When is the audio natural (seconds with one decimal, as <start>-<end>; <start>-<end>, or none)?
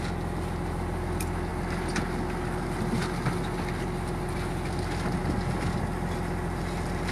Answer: 0.0-7.1